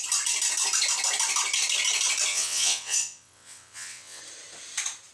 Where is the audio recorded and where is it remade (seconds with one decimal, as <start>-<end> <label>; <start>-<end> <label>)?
0.0-2.3 recorded; 2.3-4.2 remade; 4.2-5.1 recorded